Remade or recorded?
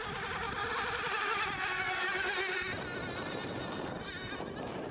recorded